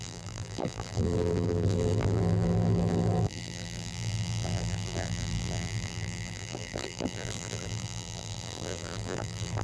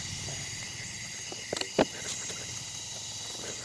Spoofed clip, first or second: first